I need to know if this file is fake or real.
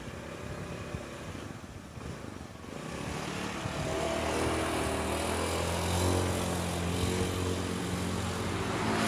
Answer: real